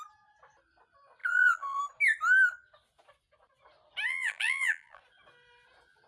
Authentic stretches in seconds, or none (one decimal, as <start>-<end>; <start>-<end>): 0.0-1.2; 1.8-4.1; 5.0-6.1